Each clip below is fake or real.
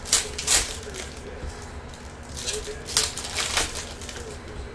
real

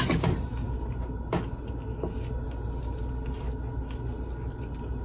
real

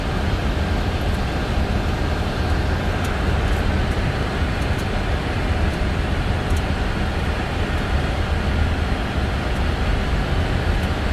real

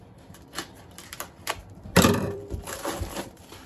fake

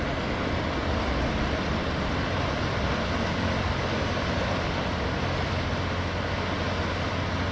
real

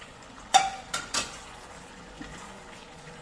fake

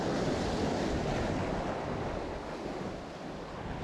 real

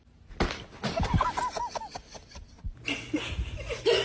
real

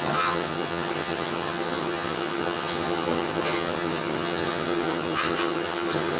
fake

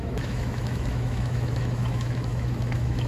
fake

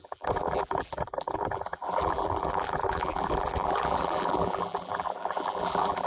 fake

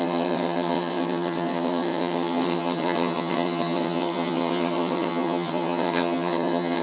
fake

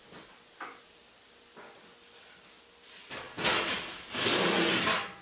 real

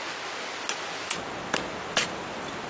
real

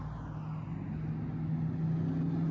real